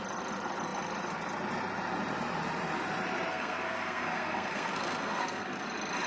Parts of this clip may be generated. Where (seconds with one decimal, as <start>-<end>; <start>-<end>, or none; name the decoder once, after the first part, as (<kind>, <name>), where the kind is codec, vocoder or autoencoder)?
3.3-5.6 (codec, SNAC)